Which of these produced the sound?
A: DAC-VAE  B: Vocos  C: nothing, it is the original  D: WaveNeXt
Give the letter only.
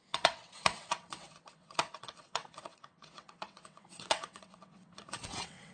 D